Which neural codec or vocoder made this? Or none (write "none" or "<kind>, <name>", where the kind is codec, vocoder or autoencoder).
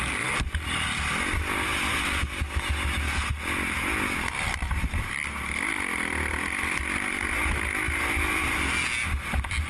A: none